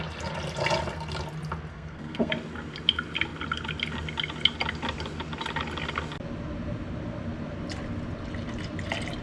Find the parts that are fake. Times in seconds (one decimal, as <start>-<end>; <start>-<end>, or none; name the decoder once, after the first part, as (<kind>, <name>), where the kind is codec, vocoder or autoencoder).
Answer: 1.7-2.3 (codec, SNAC)